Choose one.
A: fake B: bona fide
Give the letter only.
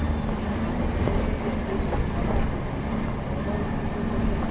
B